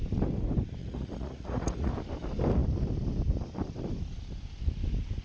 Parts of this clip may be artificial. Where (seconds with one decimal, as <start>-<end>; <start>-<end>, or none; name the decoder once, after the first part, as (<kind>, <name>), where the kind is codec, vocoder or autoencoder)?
0.8-1.9 (vocoder, Vocos)